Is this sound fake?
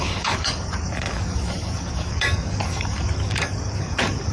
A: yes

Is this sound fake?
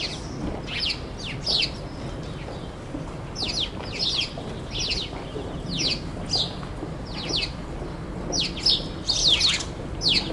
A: no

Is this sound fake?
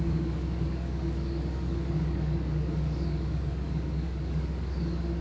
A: yes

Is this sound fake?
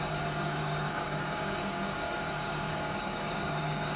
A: yes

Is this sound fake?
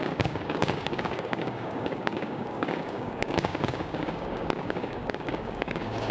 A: yes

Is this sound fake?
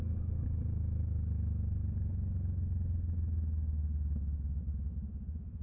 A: no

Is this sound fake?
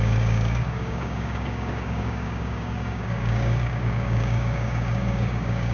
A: yes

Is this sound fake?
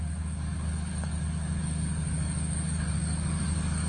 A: yes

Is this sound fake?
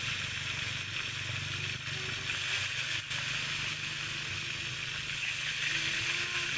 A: no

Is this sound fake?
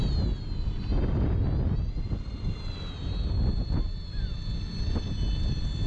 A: no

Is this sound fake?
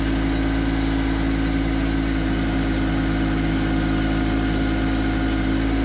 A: no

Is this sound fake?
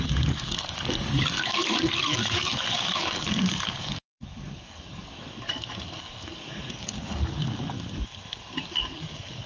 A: yes